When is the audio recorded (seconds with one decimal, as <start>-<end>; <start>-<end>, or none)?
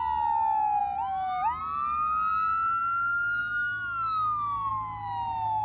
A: 0.0-5.6